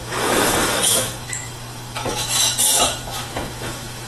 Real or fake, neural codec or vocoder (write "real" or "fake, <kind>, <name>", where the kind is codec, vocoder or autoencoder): fake, autoencoder, DAC-VAE